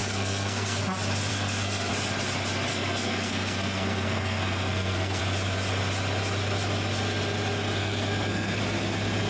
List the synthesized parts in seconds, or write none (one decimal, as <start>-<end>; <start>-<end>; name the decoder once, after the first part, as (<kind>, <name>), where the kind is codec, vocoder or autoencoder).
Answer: 0.0-0.8 (codec, SNAC); 1.3-1.9; 2.7-5.2; 7.8-8.6